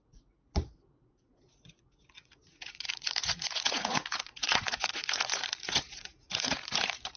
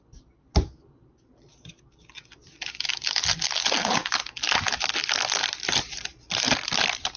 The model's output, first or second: first